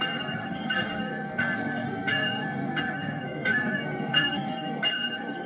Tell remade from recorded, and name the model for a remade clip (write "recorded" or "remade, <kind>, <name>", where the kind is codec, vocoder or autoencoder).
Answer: remade, codec, SNAC